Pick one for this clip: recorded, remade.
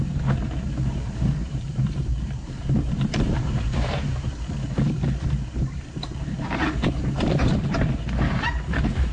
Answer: remade